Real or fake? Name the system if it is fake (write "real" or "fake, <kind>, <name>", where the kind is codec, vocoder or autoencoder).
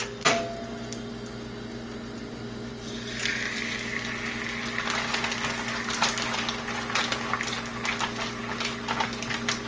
real